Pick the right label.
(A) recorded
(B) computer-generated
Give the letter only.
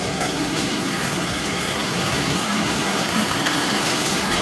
B